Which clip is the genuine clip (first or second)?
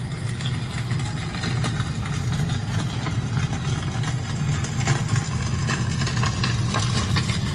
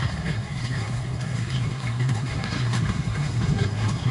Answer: first